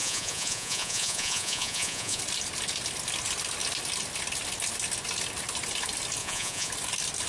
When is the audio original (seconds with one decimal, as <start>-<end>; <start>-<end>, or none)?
2.2-6.2; 6.7-7.3